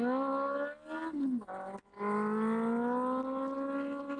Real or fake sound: real